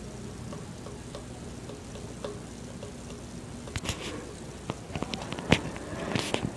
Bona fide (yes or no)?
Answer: yes